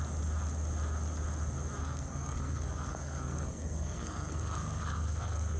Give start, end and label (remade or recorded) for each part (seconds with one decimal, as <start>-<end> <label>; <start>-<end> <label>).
0.0-1.8 recorded; 1.8-5.6 remade